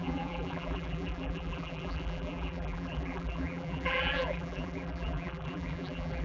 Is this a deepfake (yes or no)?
yes